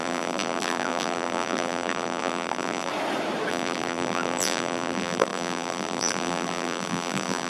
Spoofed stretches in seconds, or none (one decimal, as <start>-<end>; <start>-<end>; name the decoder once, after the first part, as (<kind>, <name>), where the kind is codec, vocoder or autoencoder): 0.0-2.9 (vocoder, BigVGAN v2); 3.5-7.5